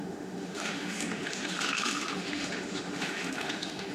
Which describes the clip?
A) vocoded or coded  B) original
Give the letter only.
A